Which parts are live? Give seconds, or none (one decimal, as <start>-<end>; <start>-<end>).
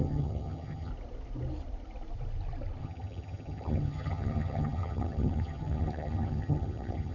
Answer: 0.9-2.8